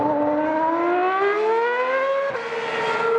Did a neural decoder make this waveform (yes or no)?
no